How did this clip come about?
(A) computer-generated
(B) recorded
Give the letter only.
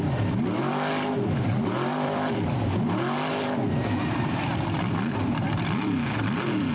A